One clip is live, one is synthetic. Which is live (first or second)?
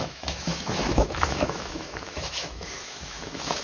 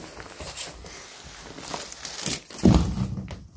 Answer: second